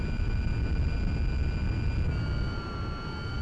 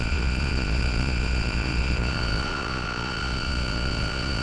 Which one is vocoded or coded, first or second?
second